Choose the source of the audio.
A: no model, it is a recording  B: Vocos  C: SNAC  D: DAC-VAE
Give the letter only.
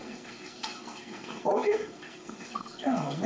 C